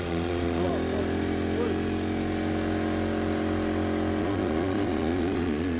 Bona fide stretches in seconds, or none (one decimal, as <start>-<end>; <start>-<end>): 0.7-4.2